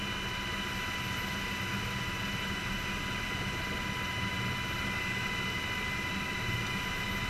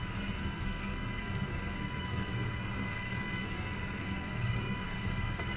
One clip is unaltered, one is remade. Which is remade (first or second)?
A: second